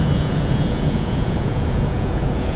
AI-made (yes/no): yes